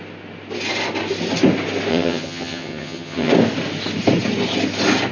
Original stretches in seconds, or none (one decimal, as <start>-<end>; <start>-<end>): 0.0-1.9; 3.3-5.1